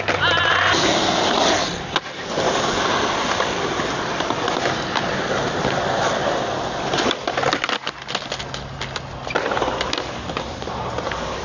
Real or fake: real